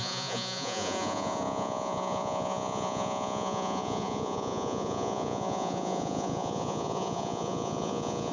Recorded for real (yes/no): no